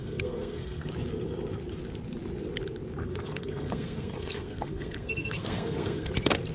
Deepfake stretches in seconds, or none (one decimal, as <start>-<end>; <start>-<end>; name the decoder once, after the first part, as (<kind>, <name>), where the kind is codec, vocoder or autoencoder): 0.0-0.9 (codec, SNAC); 3.0-6.1